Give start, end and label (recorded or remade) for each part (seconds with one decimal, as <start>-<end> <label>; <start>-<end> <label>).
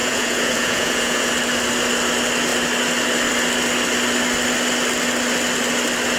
0.0-1.3 remade; 1.3-6.2 recorded